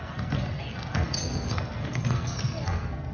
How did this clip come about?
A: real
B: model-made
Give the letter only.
B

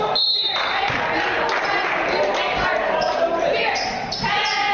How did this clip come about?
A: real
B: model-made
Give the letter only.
A